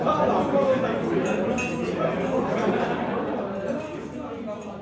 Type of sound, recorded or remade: recorded